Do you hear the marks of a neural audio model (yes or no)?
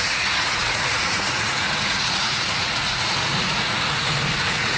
yes